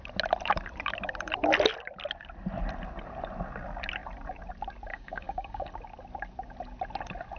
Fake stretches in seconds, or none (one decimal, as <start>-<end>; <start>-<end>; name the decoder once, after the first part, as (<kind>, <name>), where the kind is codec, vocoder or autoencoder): 4.9-5.7 (codec, DAC)